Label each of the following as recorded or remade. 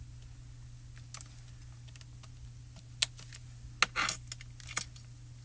recorded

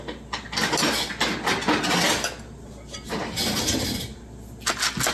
recorded